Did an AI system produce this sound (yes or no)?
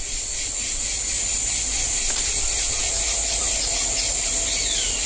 no